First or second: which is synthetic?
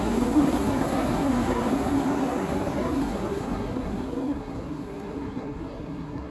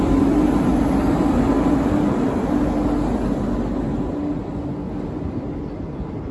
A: first